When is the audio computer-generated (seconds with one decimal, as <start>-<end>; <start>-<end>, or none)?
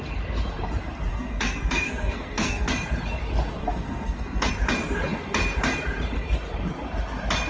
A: 1.1-2.7; 3.6-4.5